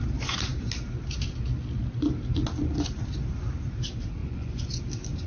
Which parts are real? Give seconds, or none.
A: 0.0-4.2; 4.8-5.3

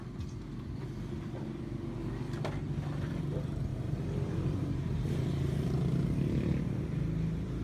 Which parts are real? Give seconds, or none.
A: 0.0-3.7; 6.6-7.6

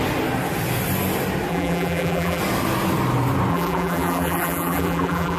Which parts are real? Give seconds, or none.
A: 0.0-1.5; 2.4-3.5

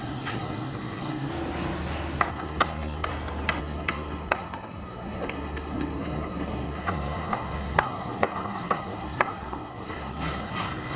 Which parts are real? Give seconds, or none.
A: 1.3-2.3; 3.1-3.6

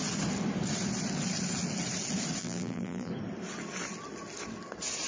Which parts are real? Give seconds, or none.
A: 0.0-2.4; 3.1-5.1

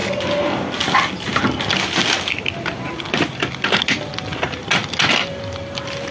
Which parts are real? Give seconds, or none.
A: 0.0-6.1

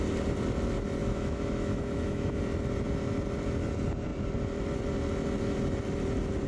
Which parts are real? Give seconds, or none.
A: 0.0-1.0; 2.4-6.5

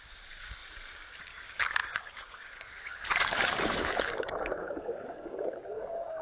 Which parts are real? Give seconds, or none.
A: 0.6-1.2